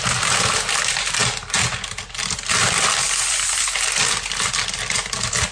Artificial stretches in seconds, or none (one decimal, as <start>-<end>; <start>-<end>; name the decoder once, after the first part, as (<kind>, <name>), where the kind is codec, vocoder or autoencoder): none